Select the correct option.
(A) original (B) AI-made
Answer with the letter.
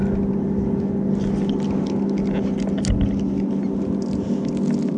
A